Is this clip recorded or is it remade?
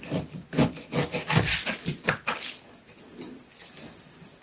recorded